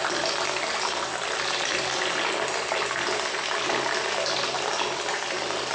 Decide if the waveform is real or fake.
real